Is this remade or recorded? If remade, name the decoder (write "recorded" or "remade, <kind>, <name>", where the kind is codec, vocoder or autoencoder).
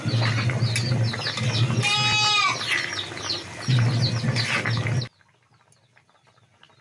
recorded